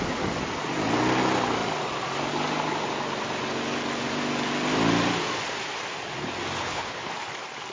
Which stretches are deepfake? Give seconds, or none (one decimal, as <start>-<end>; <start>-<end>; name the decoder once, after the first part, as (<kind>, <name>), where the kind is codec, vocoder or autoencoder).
6.6-7.1 (codec, HILCodec)